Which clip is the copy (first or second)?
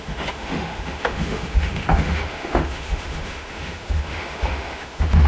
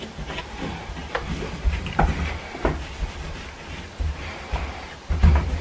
first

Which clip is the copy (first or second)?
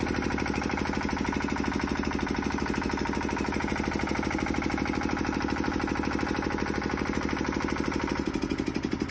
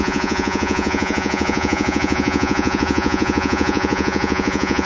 second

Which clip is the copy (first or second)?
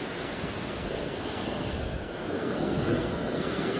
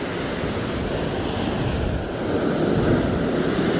first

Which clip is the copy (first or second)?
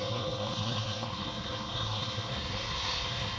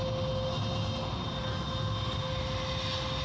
first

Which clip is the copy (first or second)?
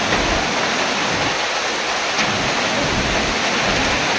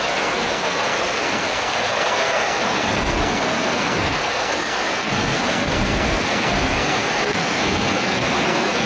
second